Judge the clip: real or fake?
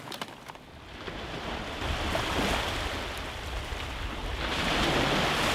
real